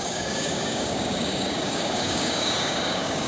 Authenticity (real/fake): fake